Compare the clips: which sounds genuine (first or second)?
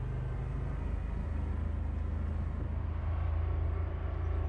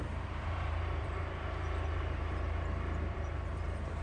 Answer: first